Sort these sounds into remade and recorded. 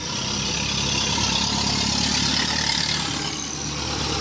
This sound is recorded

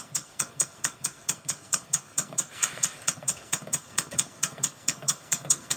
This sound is remade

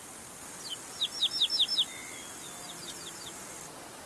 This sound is recorded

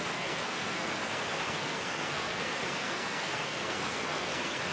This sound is remade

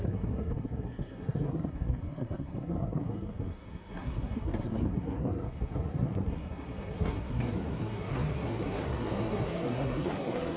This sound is remade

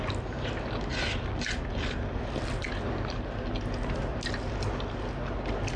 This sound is recorded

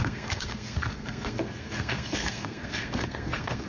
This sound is remade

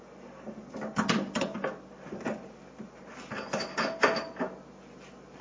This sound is recorded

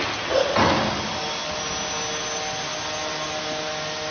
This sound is recorded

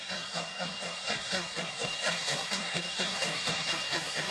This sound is remade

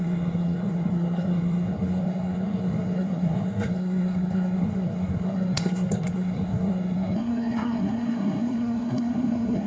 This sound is remade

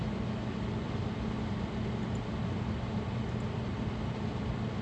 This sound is recorded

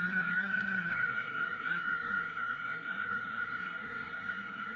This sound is remade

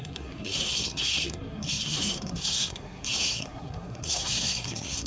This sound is remade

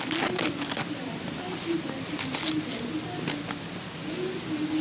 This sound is recorded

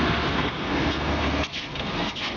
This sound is remade